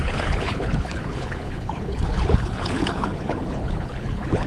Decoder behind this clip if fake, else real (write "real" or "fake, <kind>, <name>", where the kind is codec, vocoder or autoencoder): fake, codec, HILCodec